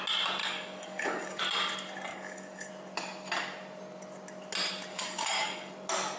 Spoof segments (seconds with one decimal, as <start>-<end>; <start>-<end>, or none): 0.4-1.4; 2.1-2.7; 4.9-5.7